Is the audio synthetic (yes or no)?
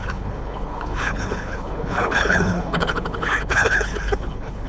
yes